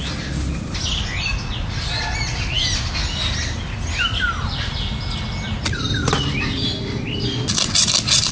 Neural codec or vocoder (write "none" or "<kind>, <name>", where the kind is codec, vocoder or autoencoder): none